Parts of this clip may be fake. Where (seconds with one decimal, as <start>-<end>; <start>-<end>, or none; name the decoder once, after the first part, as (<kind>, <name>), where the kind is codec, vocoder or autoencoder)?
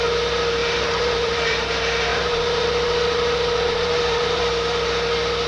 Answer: 0.6-1.5 (vocoder, BigVGAN v2); 2.1-4.4